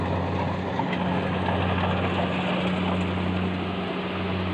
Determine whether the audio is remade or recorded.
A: recorded